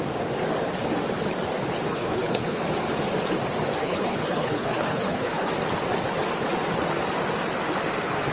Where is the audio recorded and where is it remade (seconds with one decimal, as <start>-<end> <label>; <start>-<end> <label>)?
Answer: 0.0-1.9 recorded; 1.9-2.6 remade; 2.6-3.8 recorded; 3.8-5.5 remade; 5.5-8.3 recorded